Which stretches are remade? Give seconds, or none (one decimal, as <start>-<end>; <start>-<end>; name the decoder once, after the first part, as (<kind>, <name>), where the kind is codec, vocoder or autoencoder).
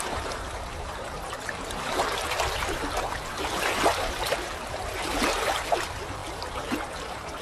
0.0-7.4 (vocoder, BigVGAN v2)